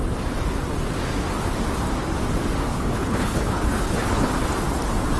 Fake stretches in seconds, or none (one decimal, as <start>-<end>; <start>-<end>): 2.7-4.3